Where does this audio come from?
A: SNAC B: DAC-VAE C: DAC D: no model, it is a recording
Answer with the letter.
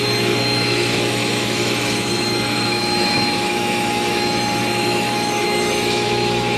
B